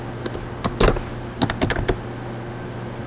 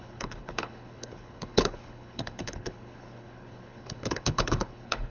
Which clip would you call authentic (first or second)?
first